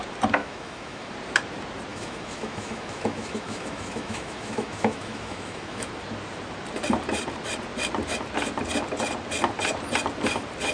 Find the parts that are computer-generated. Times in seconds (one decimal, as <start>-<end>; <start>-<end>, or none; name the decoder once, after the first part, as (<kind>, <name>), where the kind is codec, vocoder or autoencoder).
0.4-1.1 (autoencoder, DAC-VAE); 1.9-5.9